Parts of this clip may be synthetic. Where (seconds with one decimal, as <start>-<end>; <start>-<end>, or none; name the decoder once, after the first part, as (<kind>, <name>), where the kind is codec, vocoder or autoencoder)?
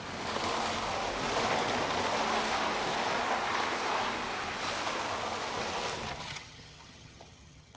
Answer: 6.2-7.8 (vocoder, HiFi-GAN)